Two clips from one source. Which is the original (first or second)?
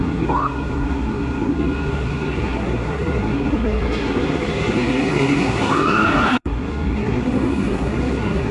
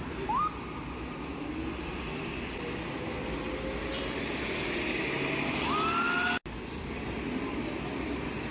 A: second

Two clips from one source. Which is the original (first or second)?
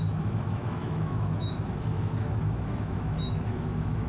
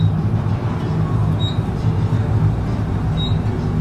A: second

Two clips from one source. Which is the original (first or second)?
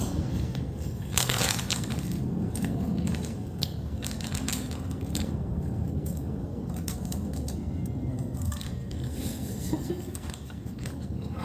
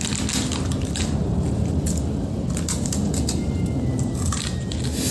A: second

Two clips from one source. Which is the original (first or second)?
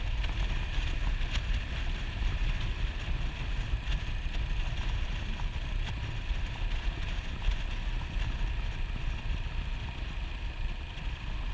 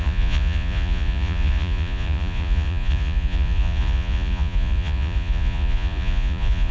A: first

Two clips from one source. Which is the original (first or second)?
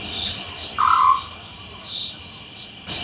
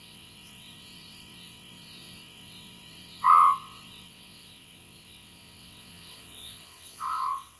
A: first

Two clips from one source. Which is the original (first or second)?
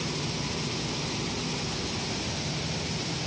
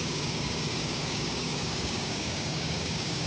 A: first